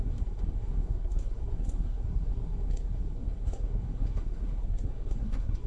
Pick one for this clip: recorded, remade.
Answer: remade